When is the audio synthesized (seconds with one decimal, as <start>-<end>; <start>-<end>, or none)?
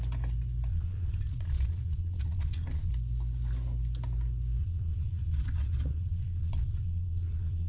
0.7-2.9; 4.6-7.7